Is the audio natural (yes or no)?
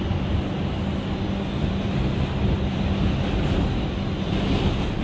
yes